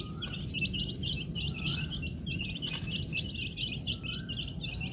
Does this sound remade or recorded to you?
recorded